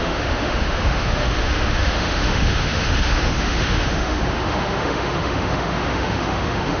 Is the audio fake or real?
fake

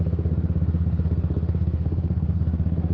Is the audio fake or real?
fake